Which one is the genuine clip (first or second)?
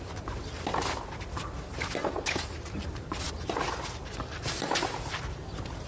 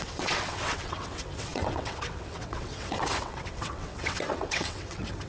first